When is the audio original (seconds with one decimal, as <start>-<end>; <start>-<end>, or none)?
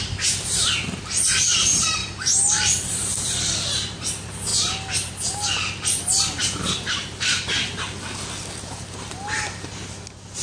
0.0-10.4